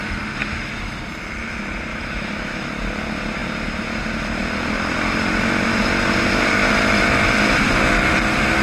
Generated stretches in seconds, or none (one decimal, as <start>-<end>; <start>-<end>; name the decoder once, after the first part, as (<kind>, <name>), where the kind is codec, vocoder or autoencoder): 0.4-1.0 (autoencoder, DAC-VAE); 1.9-2.7